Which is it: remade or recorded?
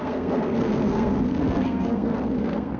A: remade